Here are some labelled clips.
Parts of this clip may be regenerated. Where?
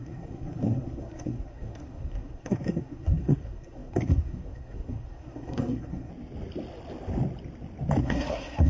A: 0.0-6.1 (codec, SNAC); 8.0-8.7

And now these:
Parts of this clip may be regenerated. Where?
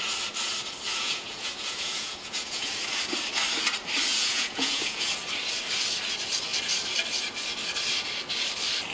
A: 0.9-2.8 (vocoder, Vocos); 4.1-5.1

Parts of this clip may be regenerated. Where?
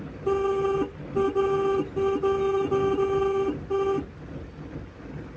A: none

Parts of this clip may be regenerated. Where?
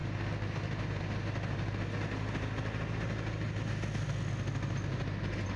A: none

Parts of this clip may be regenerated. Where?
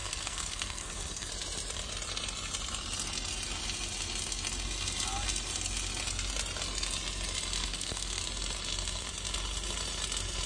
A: 0.0-1.3 (codec, SNAC); 7.6-8.2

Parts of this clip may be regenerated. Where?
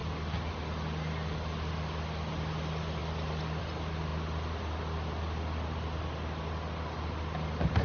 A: none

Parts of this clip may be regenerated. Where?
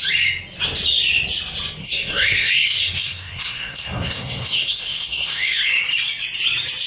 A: 1.8-5.6 (codec, SNAC)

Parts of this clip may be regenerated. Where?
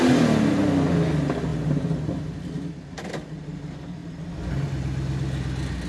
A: none